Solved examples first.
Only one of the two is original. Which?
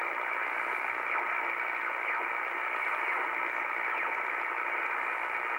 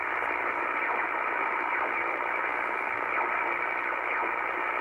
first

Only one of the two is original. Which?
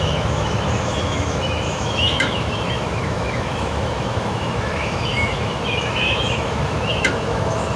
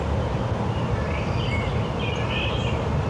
second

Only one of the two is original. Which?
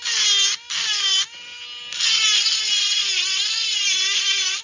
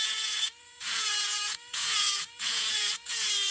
first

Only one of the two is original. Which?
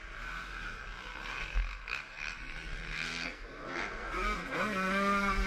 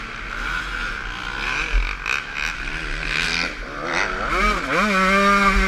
second